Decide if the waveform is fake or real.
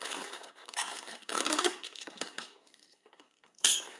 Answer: fake